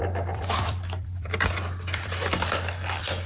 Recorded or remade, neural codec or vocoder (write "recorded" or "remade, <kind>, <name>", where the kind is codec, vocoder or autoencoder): remade, vocoder, BigVGAN v2